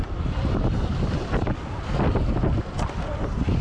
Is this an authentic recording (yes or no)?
yes